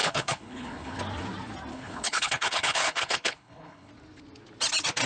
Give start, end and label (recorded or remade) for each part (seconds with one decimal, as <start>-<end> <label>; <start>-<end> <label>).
0.0-1.0 remade; 1.0-1.7 recorded; 1.7-3.9 remade; 3.9-5.1 recorded